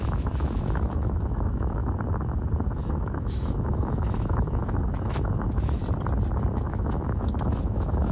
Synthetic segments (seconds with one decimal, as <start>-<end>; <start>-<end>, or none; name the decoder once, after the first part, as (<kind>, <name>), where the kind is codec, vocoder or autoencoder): 0.0-1.8 (autoencoder, DAC-VAE); 2.7-5.8; 6.5-8.1